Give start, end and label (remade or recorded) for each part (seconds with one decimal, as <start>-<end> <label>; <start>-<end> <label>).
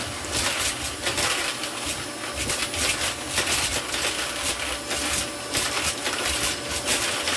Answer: 0.0-7.4 recorded